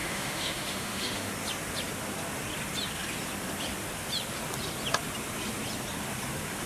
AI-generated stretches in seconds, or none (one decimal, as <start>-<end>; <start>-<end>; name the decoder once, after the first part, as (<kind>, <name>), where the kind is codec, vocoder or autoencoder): 0.0-1.3 (autoencoder, DAC-VAE)